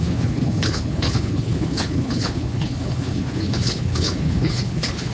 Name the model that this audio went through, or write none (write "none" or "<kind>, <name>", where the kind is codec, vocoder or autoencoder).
codec, HILCodec